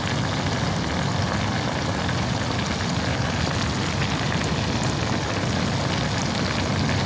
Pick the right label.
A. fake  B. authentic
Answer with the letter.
B